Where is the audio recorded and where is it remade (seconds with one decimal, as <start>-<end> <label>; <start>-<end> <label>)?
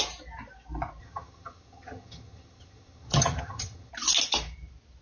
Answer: 0.0-1.0 recorded; 1.0-3.9 remade; 3.9-5.0 recorded